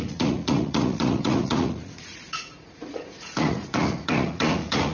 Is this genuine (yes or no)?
no